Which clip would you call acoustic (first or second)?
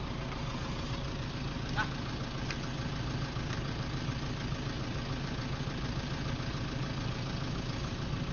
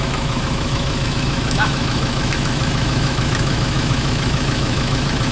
first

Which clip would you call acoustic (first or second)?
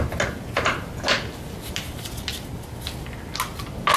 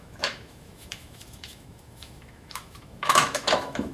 first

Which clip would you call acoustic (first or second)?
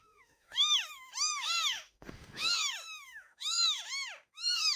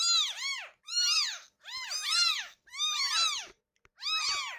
second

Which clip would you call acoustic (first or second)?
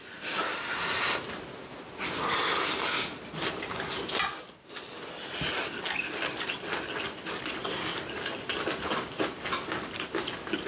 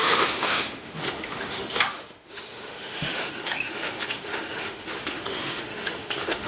first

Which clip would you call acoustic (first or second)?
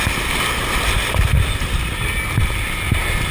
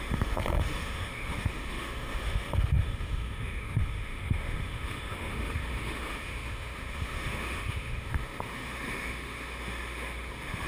first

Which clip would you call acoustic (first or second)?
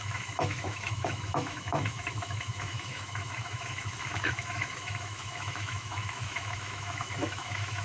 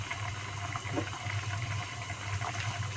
second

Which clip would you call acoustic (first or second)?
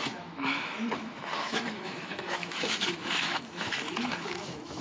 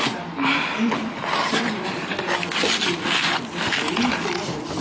second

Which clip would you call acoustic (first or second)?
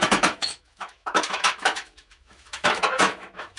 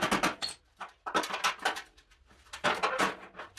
second